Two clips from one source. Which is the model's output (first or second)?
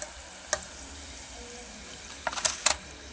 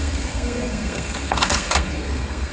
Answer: second